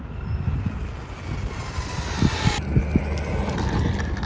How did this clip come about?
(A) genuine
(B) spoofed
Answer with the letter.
A